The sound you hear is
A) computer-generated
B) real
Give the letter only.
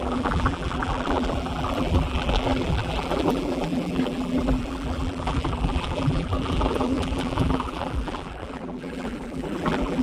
A